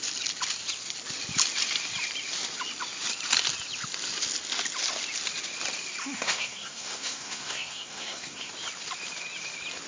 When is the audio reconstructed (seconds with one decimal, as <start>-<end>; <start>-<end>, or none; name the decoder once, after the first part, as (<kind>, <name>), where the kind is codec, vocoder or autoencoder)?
6.0-8.5 (codec, SNAC)